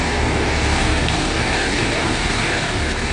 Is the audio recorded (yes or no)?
no